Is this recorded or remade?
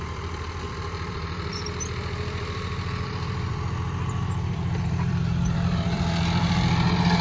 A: remade